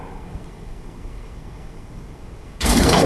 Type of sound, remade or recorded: remade